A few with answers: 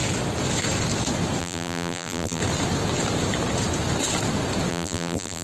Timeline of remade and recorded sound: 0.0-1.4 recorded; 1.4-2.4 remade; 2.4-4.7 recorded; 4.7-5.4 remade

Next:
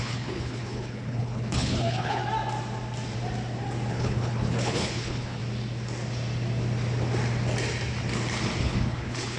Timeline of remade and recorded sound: 0.0-2.2 remade; 2.2-3.9 recorded; 3.9-5.4 remade; 5.4-8.6 recorded; 8.6-9.4 remade

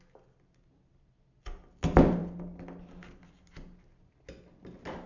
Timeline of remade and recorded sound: 0.0-5.1 recorded

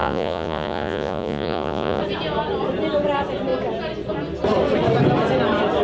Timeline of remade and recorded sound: 0.0-2.0 remade; 2.0-5.8 recorded

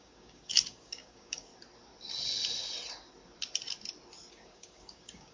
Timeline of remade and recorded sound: 0.0-1.5 remade; 1.5-4.3 recorded; 4.3-5.3 remade

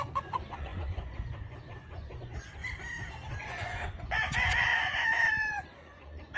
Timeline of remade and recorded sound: 0.0-2.6 remade; 2.6-3.3 recorded; 3.3-6.4 remade